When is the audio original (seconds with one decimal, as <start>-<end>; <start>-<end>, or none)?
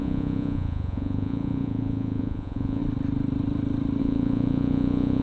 2.8-4.0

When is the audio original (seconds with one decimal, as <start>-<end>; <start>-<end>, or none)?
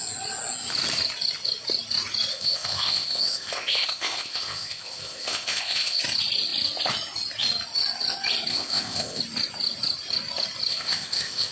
0.0-2.3; 6.0-8.5; 9.2-10.7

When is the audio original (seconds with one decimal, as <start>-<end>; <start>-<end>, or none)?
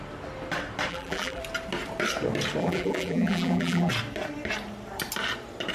0.0-0.9; 1.4-2.6; 3.9-5.7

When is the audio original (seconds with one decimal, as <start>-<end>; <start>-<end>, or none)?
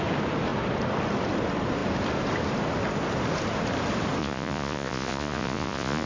0.0-4.2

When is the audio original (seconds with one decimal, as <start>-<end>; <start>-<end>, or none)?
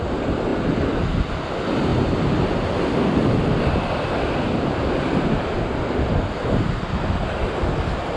0.0-8.2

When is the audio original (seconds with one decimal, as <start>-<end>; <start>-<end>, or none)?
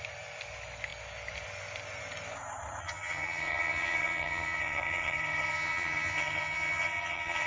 0.0-2.8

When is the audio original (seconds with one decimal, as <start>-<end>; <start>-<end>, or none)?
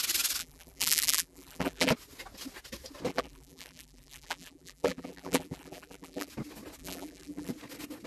0.0-0.4; 1.9-3.1; 6.3-6.8; 7.5-8.1